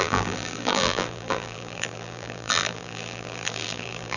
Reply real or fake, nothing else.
fake